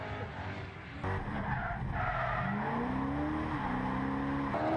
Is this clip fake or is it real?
real